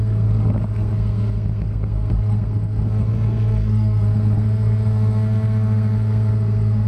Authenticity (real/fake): fake